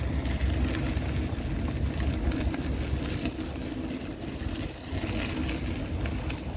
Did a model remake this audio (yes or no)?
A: no